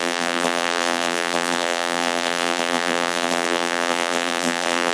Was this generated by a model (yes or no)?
yes